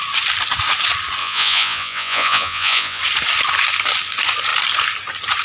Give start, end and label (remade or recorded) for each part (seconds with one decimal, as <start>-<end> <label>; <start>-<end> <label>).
0.0-1.2 recorded; 1.2-3.0 remade; 3.0-5.4 recorded